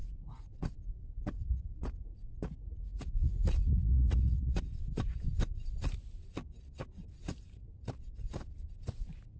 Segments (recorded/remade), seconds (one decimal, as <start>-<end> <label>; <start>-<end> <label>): 0.0-4.6 remade; 4.6-9.4 recorded